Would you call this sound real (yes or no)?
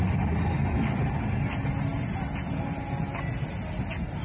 yes